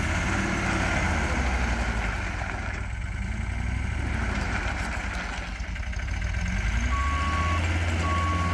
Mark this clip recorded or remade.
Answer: recorded